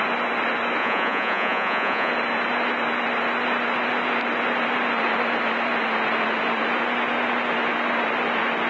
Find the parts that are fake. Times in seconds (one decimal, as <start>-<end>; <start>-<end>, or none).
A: 0.8-2.1